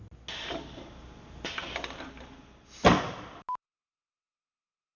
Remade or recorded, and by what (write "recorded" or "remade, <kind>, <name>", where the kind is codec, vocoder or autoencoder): recorded